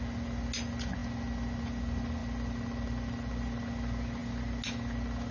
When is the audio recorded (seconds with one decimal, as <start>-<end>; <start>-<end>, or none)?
0.0-5.3